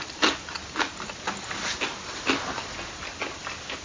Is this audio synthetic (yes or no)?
no